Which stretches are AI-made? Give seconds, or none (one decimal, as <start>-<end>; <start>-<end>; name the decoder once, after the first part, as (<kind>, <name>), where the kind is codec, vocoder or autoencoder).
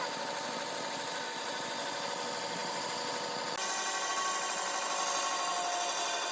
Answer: none